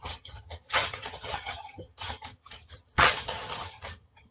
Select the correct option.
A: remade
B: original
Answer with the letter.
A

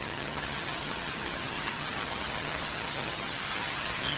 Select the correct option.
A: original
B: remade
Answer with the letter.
B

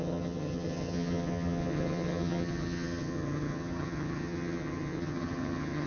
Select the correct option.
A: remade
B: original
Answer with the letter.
A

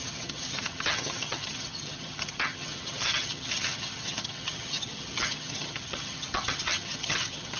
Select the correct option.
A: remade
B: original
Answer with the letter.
A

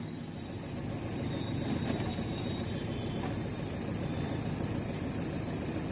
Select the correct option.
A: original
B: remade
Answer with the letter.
A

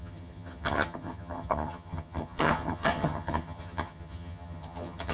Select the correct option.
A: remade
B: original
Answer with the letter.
A